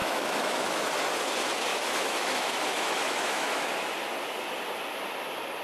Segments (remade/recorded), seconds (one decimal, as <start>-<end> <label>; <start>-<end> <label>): 0.0-0.9 remade; 0.9-1.7 recorded; 1.7-3.7 remade; 3.7-5.6 recorded